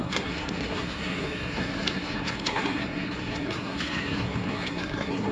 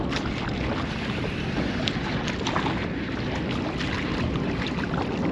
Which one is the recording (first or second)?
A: second